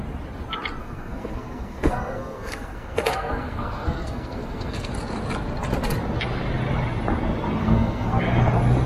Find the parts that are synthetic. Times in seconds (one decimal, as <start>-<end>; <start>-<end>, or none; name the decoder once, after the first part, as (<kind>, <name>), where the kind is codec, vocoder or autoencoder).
0.8-4.9 (codec, SNAC); 7.6-8.2